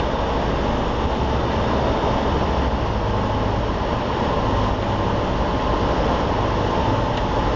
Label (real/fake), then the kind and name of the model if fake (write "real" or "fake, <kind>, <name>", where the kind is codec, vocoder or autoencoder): real